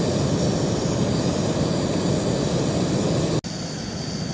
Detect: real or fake real